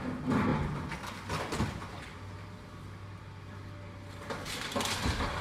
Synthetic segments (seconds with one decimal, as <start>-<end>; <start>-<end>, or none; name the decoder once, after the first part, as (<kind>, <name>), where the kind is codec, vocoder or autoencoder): none